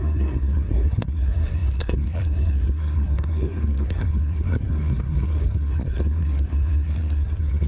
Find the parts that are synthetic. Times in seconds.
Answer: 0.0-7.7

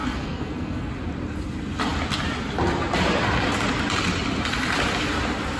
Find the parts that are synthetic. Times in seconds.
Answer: 0.0-0.9

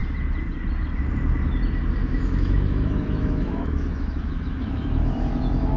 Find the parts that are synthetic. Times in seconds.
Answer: 2.0-5.8

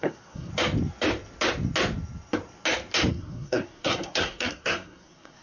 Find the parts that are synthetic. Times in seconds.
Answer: 0.0-0.5; 3.1-5.4